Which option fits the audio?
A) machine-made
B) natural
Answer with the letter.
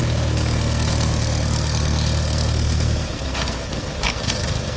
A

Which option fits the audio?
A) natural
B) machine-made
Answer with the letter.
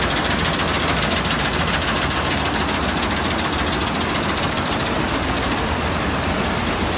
A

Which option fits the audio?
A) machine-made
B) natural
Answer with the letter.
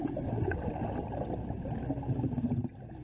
B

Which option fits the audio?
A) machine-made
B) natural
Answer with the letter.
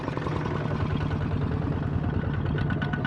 B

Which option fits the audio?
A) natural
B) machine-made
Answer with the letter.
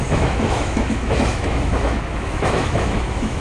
B